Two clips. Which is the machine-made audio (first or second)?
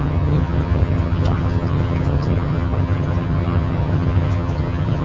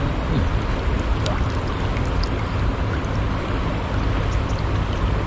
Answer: first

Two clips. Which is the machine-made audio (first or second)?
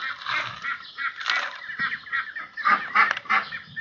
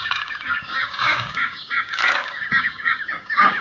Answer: second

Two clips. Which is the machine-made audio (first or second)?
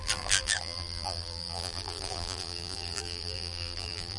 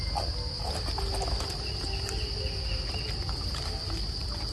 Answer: first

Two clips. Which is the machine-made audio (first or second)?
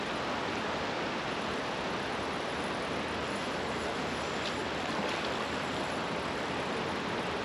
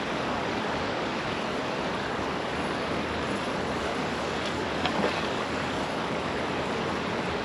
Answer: second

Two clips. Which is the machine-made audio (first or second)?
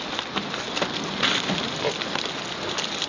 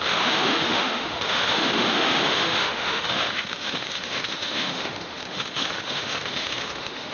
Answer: second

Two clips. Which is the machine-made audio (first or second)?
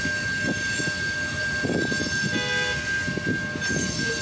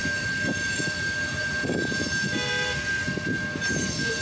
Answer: second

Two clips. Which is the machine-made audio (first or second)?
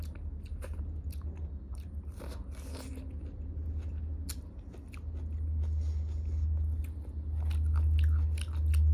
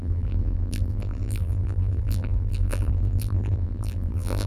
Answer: second